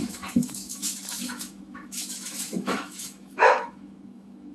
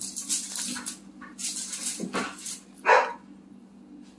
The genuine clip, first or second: second